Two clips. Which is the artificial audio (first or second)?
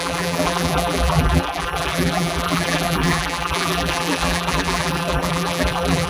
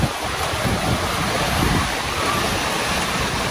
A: first